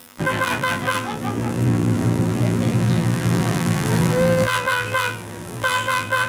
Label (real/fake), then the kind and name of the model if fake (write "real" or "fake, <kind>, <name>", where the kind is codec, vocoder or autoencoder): fake, vocoder, BigVGAN v2